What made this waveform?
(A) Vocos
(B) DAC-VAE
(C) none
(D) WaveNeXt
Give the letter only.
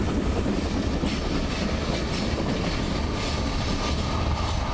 C